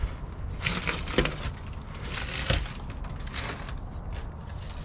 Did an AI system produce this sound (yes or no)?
no